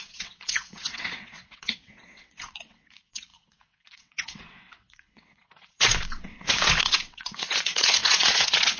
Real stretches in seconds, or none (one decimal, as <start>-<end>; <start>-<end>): none